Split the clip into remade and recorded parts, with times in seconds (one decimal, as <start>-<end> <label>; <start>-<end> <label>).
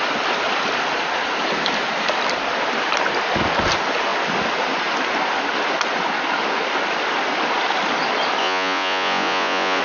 0.0-8.4 recorded; 8.4-9.8 remade